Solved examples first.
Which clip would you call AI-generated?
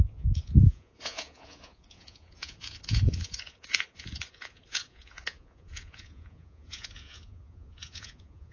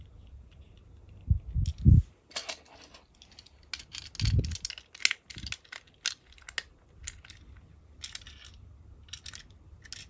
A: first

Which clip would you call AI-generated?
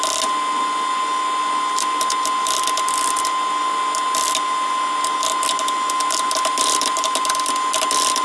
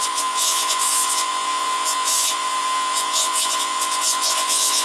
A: second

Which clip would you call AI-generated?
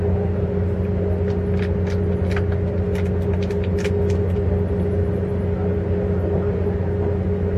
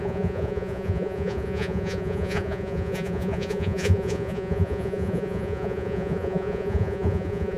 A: second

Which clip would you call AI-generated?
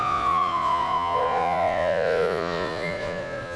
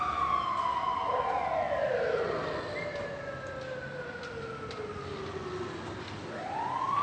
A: first